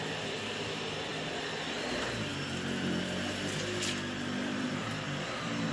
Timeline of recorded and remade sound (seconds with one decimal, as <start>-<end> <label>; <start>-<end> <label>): 0.0-5.7 recorded